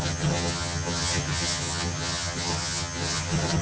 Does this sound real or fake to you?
fake